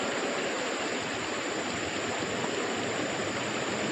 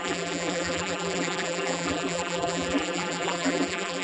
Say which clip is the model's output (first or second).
second